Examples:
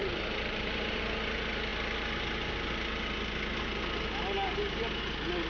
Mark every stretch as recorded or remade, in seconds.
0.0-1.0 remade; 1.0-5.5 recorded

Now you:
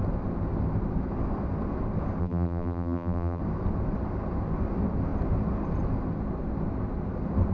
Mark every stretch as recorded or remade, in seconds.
0.0-2.2 recorded; 2.2-3.4 remade; 3.4-7.5 recorded

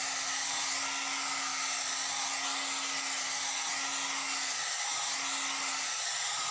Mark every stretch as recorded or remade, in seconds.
0.0-6.5 recorded

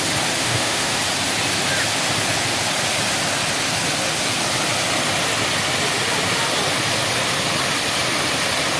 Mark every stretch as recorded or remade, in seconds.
0.0-0.4 recorded; 0.4-1.0 remade; 1.0-8.8 recorded

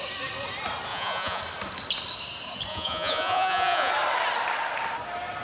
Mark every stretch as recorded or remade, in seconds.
0.0-0.9 recorded; 0.9-1.4 remade; 1.4-2.7 recorded; 2.7-3.9 remade; 3.9-5.4 recorded

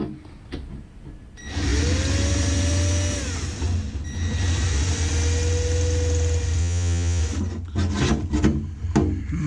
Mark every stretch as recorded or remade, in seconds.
0.0-6.6 recorded; 6.6-7.2 remade; 7.2-9.5 recorded

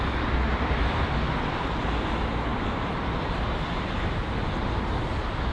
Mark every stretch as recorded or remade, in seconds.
0.0-0.5 recorded; 0.5-1.1 remade; 1.1-2.5 recorded; 2.5-4.4 remade; 4.4-5.5 recorded